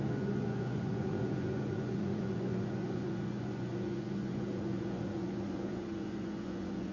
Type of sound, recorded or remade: remade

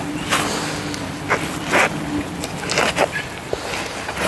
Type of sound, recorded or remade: recorded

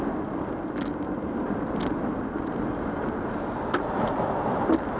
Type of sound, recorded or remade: recorded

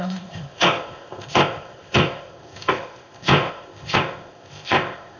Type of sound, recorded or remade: remade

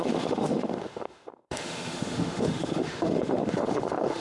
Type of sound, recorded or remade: remade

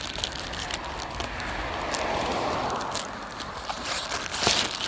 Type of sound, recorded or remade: recorded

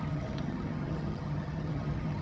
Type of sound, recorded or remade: remade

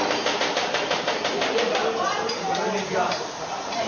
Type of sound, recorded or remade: remade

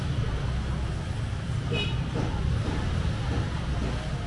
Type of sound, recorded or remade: recorded